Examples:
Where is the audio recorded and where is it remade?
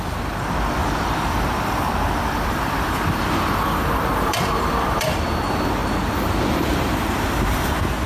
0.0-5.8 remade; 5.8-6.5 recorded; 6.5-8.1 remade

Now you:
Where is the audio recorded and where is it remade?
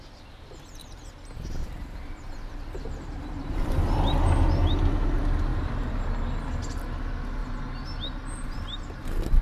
0.0-1.6 recorded; 1.6-3.7 remade; 3.7-9.4 recorded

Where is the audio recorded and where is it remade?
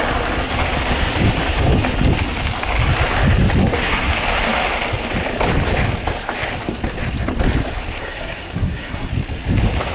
0.0-3.6 recorded; 3.6-4.1 remade; 4.1-8.0 recorded; 8.0-9.1 remade; 9.1-9.9 recorded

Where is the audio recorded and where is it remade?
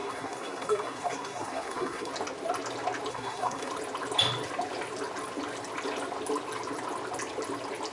0.0-2.1 remade; 2.1-3.1 recorded; 3.1-3.7 remade; 3.7-7.9 recorded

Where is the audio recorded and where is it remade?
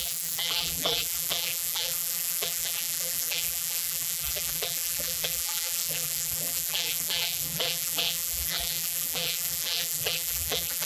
0.0-10.9 remade